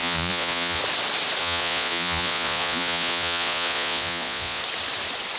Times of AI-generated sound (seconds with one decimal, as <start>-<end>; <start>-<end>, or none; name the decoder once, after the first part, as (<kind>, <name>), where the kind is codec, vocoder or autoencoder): 0.0-0.8 (vocoder, Vocos); 1.4-4.6